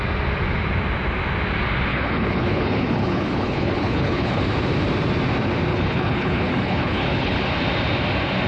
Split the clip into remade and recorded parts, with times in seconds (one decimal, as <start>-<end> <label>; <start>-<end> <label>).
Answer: 0.0-1.9 recorded; 1.9-4.4 remade; 4.4-5.7 recorded; 5.7-7.4 remade; 7.4-8.5 recorded